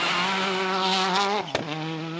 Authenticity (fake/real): real